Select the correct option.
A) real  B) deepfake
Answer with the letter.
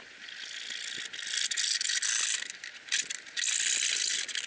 A